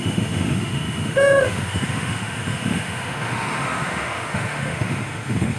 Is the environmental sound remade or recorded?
remade